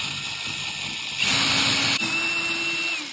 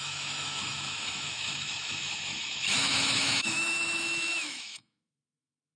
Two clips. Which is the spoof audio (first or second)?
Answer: second